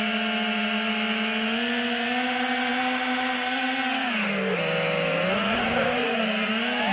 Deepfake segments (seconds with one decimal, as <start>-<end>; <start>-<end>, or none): 6.0-6.5